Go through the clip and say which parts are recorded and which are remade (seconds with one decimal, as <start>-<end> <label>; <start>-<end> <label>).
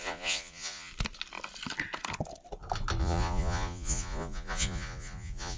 0.0-0.9 remade; 0.9-3.0 recorded; 3.0-5.6 remade